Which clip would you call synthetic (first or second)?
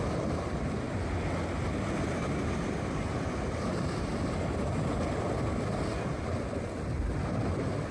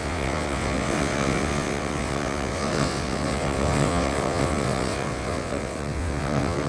second